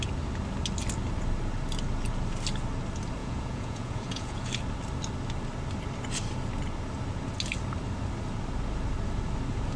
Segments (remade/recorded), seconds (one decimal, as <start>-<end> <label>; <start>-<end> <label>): 0.0-3.2 recorded; 3.2-4.5 remade; 4.5-9.8 recorded